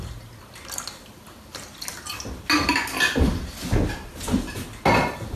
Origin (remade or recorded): recorded